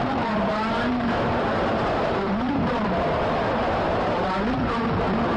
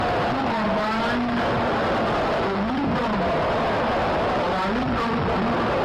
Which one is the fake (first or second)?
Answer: first